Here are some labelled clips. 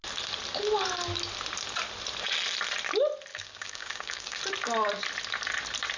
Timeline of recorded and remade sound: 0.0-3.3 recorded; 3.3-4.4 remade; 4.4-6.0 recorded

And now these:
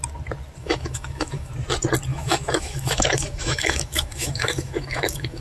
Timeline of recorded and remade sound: 0.0-0.6 recorded; 0.6-1.5 remade; 1.5-2.1 recorded; 2.1-5.4 remade

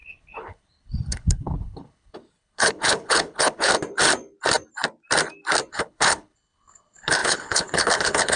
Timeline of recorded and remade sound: 0.0-3.7 remade; 3.7-5.7 recorded; 5.7-8.4 remade

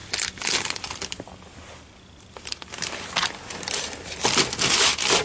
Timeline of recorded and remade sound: 0.0-5.2 recorded

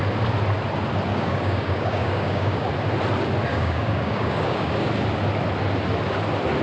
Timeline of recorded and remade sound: 0.0-1.1 recorded; 1.1-2.7 remade; 2.7-3.5 recorded; 3.5-4.9 remade; 4.9-6.6 recorded

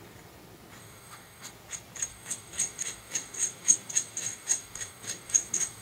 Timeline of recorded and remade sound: 0.0-0.8 recorded; 0.8-1.5 remade; 1.5-2.1 recorded; 2.1-5.8 remade

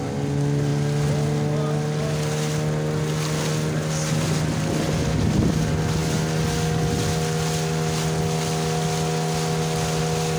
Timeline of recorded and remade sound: 0.0-10.4 recorded

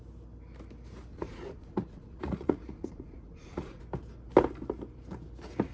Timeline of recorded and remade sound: 0.0-1.1 recorded; 1.1-3.8 remade; 3.8-5.7 recorded